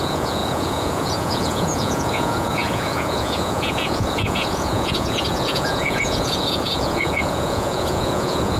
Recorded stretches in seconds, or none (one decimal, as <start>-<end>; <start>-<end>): none